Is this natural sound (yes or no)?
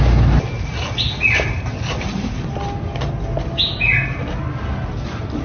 yes